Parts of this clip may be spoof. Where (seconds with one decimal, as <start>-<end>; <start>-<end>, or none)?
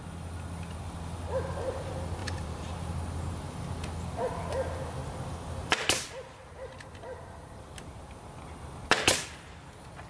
2.2-2.7